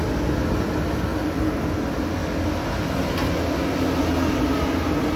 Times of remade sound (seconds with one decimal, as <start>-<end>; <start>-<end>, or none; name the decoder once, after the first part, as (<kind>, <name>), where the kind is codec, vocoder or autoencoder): 1.1-1.6 (vocoder, BigVGAN v2)